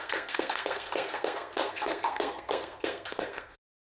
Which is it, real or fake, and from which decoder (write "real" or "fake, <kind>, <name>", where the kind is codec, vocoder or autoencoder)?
fake, codec, SNAC